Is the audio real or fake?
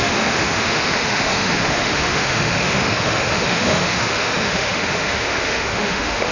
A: fake